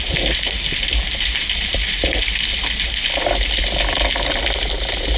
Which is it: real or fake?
real